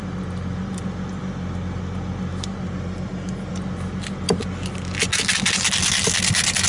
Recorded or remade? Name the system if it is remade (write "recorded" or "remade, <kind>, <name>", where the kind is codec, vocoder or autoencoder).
recorded